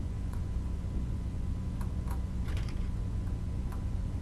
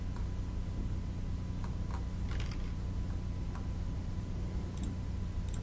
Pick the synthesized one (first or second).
first